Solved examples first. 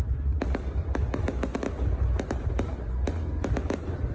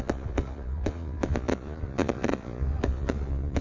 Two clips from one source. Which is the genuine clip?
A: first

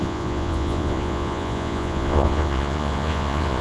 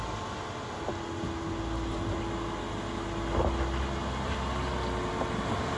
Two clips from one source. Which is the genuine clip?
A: second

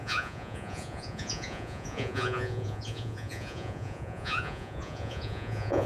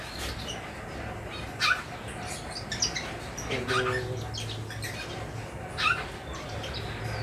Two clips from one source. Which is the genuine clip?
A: second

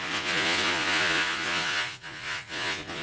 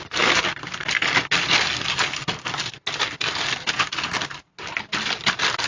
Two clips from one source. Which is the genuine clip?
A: second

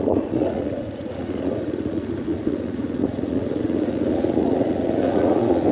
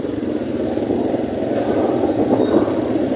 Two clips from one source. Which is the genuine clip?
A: second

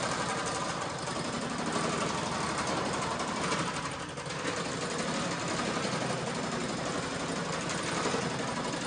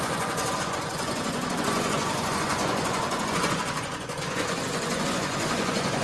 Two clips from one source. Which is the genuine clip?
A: first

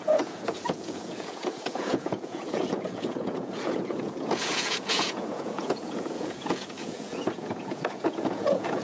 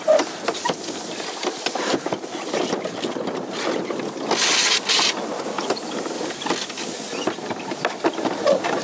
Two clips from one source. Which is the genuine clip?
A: second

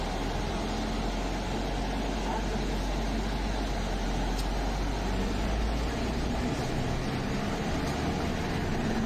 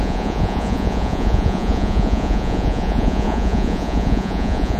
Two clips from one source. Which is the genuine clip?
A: first